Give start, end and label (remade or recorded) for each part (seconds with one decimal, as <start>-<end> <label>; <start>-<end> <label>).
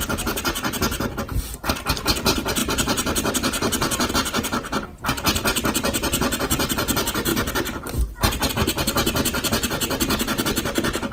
0.0-2.6 recorded; 2.6-4.1 remade; 4.1-7.3 recorded; 7.3-8.5 remade; 8.5-11.1 recorded